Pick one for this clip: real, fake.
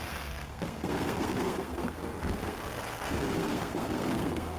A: fake